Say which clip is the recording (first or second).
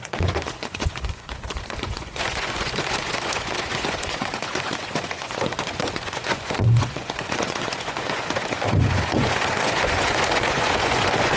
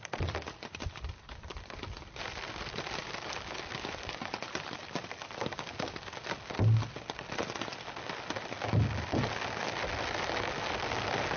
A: second